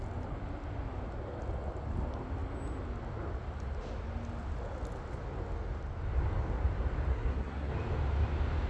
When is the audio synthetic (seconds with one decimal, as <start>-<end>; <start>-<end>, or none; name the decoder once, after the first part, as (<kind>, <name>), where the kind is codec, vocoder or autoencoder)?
7.1-7.7 (codec, SNAC)